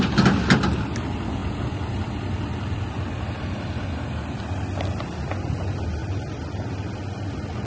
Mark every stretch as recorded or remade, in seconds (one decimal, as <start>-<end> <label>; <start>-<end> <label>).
0.0-7.7 recorded